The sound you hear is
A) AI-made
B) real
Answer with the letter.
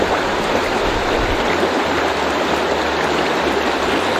A